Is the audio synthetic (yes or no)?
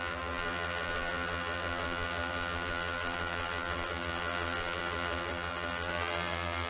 yes